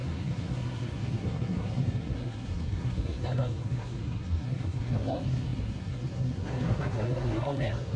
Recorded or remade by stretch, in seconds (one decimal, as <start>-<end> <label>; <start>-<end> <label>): 0.0-8.0 remade